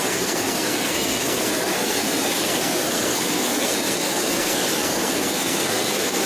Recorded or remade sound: remade